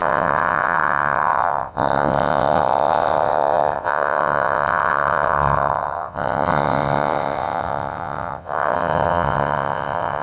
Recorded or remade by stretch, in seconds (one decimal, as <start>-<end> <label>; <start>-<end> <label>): 0.0-10.2 remade